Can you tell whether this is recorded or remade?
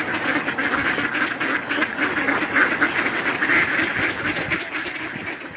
recorded